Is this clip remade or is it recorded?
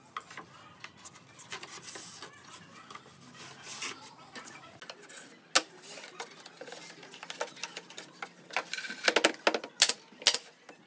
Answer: recorded